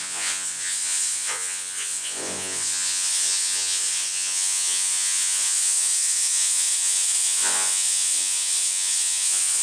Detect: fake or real fake